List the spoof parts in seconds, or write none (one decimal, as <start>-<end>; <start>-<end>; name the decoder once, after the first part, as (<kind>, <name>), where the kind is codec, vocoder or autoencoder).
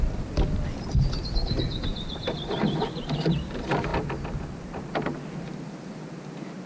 none